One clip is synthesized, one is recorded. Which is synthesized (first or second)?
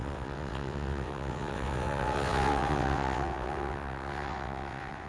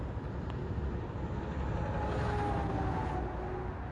first